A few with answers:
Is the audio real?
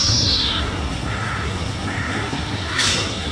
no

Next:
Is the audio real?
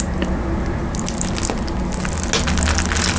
yes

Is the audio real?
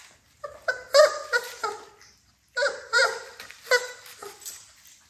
yes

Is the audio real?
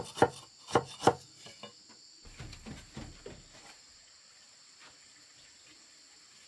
yes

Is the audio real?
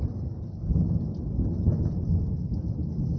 yes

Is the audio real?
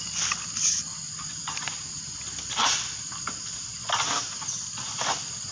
yes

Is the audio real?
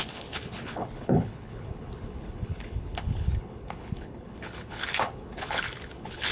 no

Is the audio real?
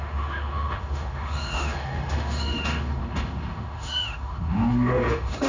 no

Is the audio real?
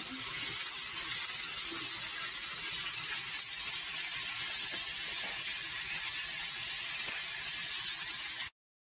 yes